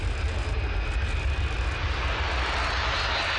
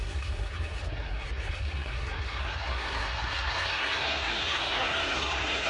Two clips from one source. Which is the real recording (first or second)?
first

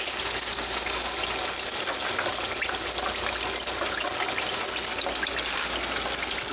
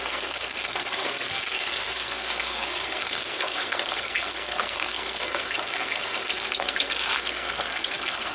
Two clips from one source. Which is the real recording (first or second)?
first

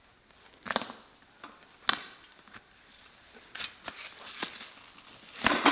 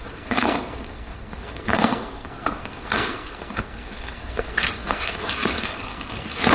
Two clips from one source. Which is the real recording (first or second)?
first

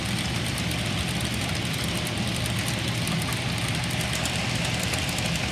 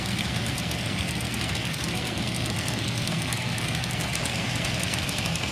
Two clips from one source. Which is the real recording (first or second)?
first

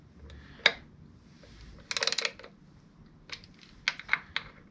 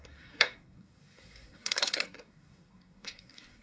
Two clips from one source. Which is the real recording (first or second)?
first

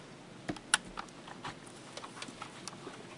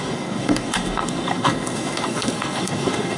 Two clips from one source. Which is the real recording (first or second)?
first